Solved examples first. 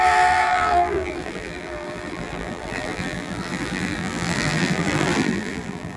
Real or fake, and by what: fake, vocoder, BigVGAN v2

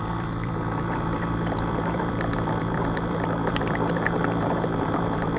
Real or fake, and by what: fake, vocoder, BigVGAN v2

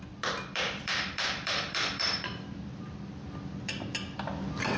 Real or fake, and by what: fake, vocoder, BigVGAN v2